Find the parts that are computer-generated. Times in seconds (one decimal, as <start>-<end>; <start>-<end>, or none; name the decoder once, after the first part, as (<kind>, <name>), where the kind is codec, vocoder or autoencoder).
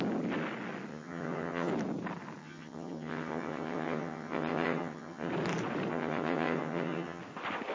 0.9-1.7 (vocoder, HiFi-GAN); 2.4-5.3; 5.9-7.2